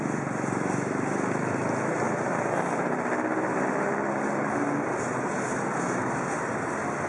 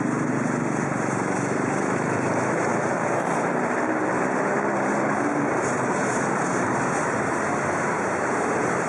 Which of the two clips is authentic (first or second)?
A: first